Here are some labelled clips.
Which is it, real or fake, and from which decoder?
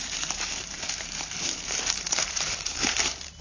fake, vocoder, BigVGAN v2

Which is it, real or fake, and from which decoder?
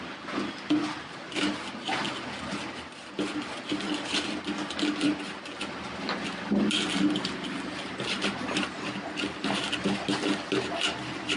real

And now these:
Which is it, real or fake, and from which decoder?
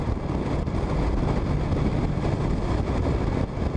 real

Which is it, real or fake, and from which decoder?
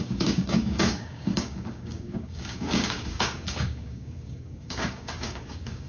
fake, codec, DAC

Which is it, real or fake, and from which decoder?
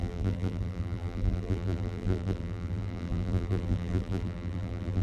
fake, vocoder, BigVGAN v2